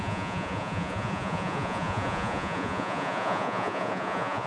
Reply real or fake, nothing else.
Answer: fake